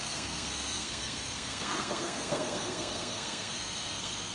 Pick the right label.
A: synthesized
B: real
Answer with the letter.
A